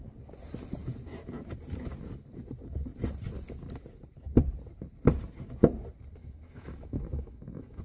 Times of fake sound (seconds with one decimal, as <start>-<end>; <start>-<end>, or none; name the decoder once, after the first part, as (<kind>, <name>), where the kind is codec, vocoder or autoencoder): 6.2-7.8 (autoencoder, DAC-VAE)